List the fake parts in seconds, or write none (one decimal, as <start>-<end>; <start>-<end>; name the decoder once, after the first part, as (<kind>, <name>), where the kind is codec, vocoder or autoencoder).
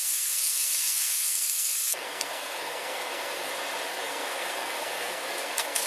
0.0-3.5 (codec, SNAC); 3.9-5.9